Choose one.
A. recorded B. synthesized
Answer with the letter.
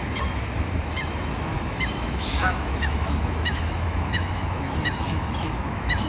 B